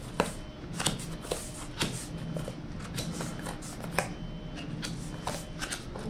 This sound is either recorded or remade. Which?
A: recorded